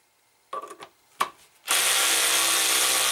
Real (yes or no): yes